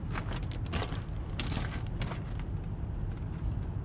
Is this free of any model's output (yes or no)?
yes